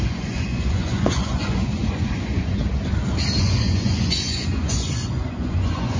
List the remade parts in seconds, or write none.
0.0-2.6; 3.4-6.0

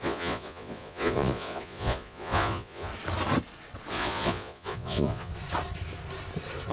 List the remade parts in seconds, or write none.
0.0-2.9; 3.9-5.3

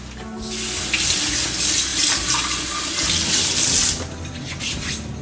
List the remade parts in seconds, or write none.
none

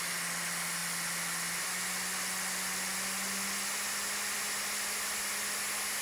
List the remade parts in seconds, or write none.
none

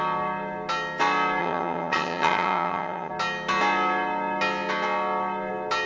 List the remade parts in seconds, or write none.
1.4-3.1